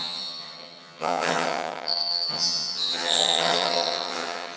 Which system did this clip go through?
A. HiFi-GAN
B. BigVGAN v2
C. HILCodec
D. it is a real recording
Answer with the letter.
A